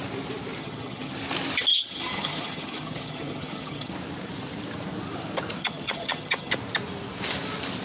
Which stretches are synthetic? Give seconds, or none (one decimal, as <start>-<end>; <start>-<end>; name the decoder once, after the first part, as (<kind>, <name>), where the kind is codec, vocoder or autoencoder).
0.6-1.1 (vocoder, HiFi-GAN); 1.7-3.9; 5.6-6.5